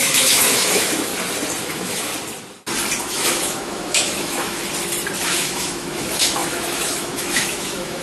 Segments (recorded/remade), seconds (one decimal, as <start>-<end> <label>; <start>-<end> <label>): 0.0-1.1 remade; 1.1-1.6 recorded; 1.6-2.1 remade; 2.1-3.0 recorded; 3.0-4.6 remade; 4.6-5.2 recorded; 5.2-8.0 remade